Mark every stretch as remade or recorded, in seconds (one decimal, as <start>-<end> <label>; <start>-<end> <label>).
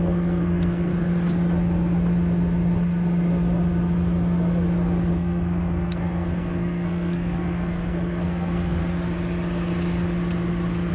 0.0-0.9 remade; 0.9-5.1 recorded; 5.1-8.8 remade; 8.8-10.9 recorded